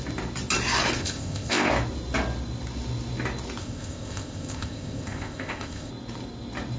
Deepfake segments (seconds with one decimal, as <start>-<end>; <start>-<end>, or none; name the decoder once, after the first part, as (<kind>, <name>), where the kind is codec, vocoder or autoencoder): 1.0-1.7 (codec, ZipCodec); 3.6-5.9